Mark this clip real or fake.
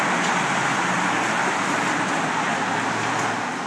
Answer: real